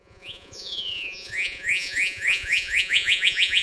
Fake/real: fake